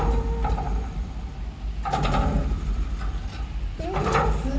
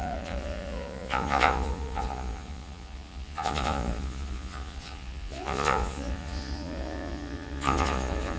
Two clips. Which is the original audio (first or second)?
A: first